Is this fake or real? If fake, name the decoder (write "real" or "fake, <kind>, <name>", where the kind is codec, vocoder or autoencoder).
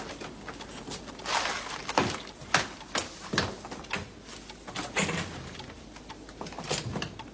real